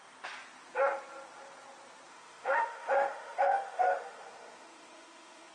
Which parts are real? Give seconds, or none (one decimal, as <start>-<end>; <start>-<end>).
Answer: 0.0-2.1